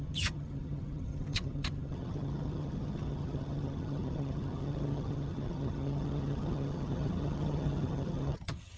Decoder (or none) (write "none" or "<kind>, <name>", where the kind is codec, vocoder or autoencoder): vocoder, HiFi-GAN